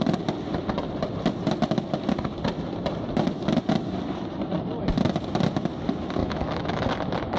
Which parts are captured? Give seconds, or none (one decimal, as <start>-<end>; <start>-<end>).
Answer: 0.0-6.2; 6.9-7.4